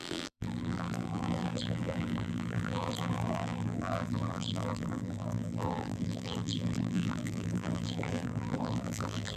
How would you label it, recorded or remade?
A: remade